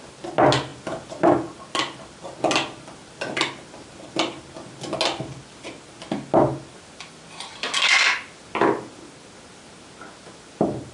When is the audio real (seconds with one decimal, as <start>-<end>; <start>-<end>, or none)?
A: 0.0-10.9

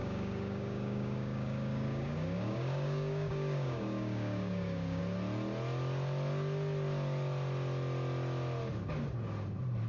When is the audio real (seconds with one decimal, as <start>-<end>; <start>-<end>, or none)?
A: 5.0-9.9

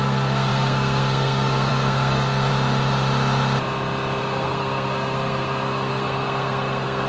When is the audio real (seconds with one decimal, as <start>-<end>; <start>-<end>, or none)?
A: 2.5-4.2